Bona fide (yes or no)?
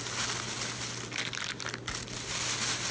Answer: yes